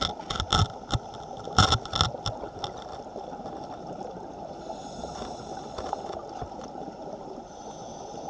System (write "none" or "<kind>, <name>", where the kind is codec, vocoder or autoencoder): none